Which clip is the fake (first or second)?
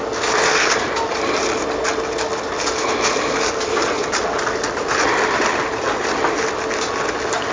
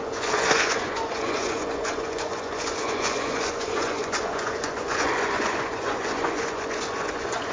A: second